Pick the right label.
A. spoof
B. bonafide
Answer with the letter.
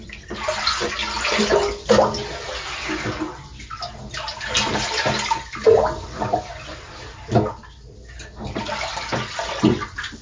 B